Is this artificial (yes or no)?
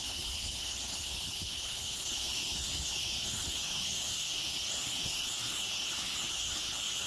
yes